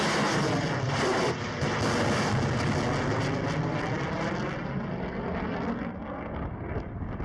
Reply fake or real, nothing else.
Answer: real